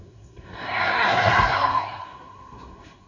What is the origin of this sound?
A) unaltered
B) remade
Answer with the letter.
B